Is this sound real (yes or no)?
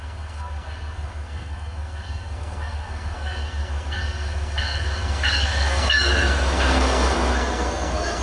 no